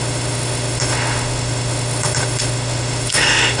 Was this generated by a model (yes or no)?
yes